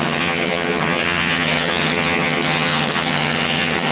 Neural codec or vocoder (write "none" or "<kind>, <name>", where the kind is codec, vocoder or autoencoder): vocoder, HiFi-GAN